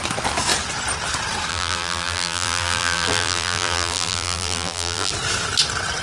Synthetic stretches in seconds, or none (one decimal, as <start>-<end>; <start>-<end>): 1.5-5.1